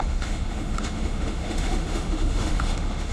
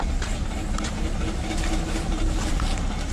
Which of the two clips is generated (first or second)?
first